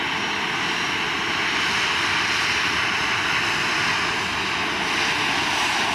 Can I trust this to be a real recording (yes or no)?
yes